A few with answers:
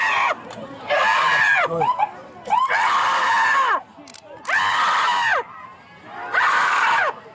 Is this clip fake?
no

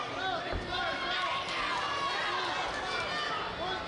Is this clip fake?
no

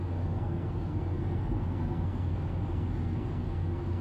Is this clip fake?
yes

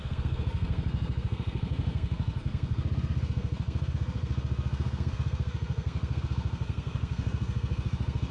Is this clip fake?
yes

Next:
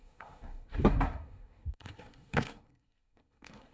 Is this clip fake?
yes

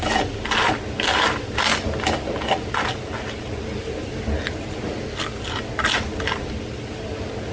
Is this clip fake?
no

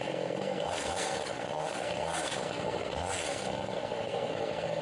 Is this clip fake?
yes